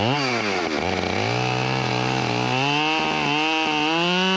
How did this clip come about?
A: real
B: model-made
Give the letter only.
A